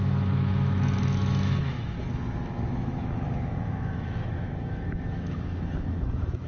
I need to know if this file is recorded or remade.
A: remade